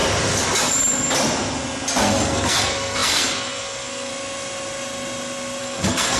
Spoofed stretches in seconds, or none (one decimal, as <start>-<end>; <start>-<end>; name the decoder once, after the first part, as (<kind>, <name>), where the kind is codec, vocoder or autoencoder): 2.0-4.1 (codec, SNAC); 5.6-6.2